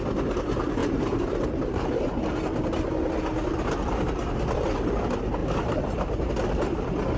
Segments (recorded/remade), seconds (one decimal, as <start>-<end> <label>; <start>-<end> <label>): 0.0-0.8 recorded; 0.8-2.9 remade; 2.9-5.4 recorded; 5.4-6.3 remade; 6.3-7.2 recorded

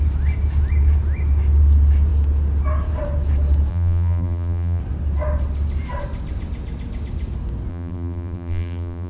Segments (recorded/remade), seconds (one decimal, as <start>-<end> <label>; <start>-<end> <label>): 0.0-3.7 recorded; 3.7-4.8 remade; 4.8-7.7 recorded; 7.7-9.1 remade

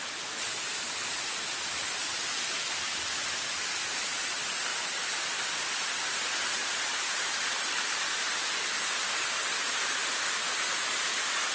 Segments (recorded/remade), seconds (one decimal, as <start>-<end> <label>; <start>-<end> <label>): 0.0-11.5 recorded

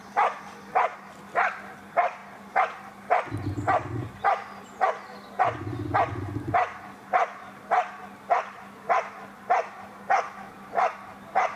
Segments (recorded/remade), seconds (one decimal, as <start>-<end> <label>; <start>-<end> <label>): 0.0-11.6 recorded

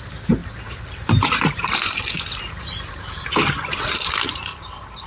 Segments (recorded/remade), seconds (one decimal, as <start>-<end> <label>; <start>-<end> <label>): 0.0-0.4 recorded; 0.4-3.5 remade; 3.5-4.5 recorded; 4.5-5.1 remade

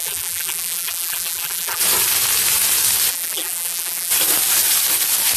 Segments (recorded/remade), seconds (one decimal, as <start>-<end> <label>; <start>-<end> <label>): 0.0-1.8 remade; 1.8-3.1 recorded; 3.1-4.1 remade; 4.1-5.4 recorded

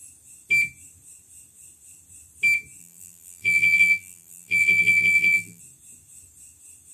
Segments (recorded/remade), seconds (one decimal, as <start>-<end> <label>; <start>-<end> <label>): 0.0-2.8 recorded; 2.8-5.6 remade; 5.6-6.9 recorded

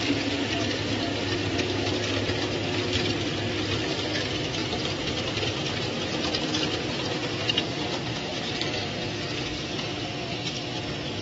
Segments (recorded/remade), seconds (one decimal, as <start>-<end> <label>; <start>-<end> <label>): 0.0-1.4 recorded; 1.4-1.9 remade; 1.9-8.3 recorded; 8.3-9.1 remade; 9.1-11.2 recorded